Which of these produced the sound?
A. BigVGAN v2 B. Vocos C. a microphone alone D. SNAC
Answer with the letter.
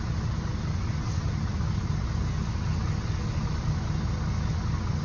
C